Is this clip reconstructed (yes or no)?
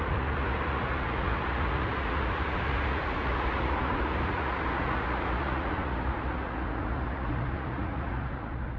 yes